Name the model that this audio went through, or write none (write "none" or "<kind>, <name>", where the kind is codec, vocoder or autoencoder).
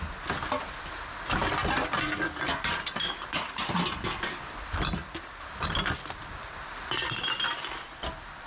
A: none